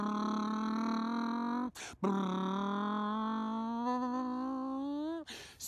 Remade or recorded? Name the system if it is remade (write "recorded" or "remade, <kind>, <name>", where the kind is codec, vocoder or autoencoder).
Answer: recorded